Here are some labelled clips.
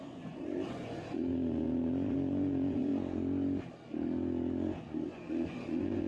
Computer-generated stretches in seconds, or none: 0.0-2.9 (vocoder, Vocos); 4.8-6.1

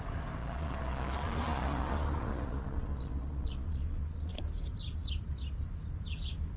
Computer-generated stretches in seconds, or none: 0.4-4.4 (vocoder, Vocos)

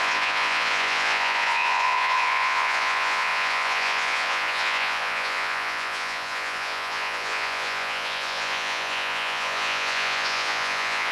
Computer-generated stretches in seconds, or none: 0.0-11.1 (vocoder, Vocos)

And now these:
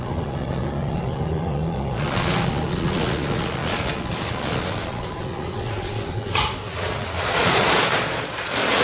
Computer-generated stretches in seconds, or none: 0.0-8.8 (vocoder, Vocos)

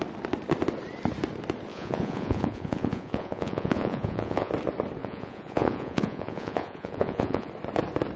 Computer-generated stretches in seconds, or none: 1.7-4.5 (vocoder, Vocos); 5.0-7.5